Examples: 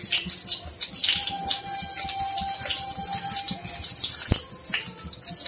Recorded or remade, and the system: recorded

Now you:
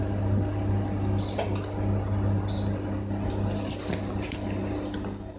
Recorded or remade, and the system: recorded